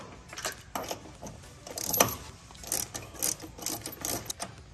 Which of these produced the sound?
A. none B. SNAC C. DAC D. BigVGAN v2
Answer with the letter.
A